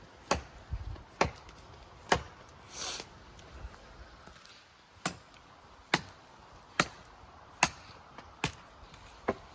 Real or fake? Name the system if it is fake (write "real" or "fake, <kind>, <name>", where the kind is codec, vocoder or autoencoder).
real